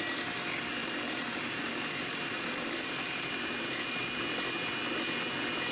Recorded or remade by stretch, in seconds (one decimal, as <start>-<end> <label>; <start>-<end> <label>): 0.0-0.8 recorded; 0.8-4.2 remade; 4.2-5.7 recorded